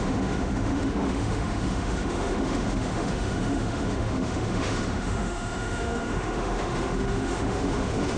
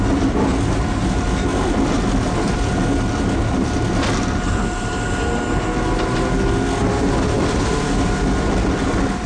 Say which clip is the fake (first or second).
first